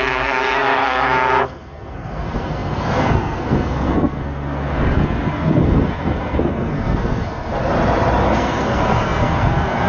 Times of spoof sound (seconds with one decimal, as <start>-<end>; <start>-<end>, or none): 0.0-7.6; 8.3-9.9